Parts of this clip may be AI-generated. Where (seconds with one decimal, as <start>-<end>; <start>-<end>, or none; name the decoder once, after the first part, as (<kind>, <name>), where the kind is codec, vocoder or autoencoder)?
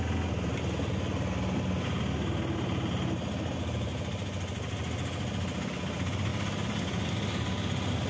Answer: none